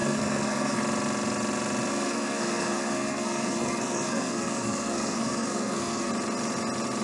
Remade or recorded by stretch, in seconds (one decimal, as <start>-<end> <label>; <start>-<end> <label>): 0.0-0.8 remade; 0.8-1.9 recorded; 1.9-6.1 remade; 6.1-7.0 recorded